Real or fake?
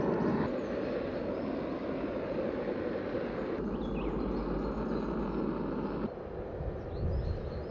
real